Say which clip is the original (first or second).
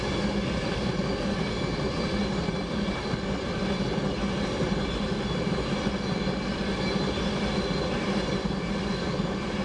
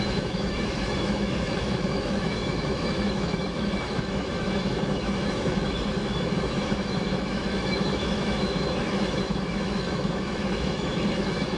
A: first